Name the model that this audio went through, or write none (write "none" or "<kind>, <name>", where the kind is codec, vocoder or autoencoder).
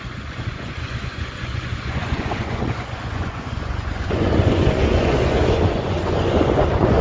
vocoder, Vocos